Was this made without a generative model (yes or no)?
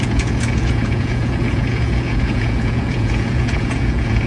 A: no